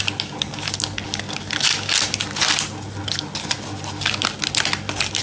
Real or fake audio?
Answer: real